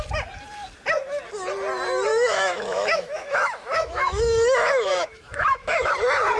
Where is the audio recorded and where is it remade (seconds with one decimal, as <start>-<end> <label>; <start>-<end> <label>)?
0.0-2.1 recorded; 2.1-5.9 remade; 5.9-6.4 recorded